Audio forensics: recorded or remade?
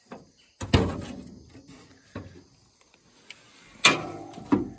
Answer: recorded